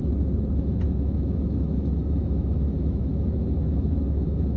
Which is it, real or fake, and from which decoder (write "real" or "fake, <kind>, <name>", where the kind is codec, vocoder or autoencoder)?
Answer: fake, autoencoder, DAC-VAE